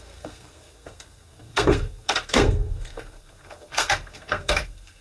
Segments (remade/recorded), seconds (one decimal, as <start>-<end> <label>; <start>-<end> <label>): 0.0-5.0 remade